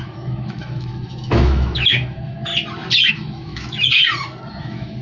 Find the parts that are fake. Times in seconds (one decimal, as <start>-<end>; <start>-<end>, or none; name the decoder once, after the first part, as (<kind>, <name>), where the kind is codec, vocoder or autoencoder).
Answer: 0.0-2.5 (autoencoder, DAC-VAE); 3.1-4.0; 4.6-5.0

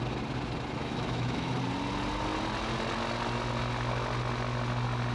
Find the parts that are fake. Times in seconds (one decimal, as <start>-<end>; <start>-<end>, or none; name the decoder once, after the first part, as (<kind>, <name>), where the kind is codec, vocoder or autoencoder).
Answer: 0.8-1.5 (autoencoder, DAC-VAE)